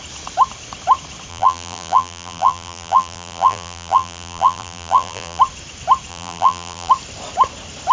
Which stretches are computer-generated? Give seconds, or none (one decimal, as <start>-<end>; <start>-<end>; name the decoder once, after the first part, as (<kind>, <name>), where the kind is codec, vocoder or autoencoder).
1.3-5.4 (vocoder, BigVGAN v2); 6.1-6.9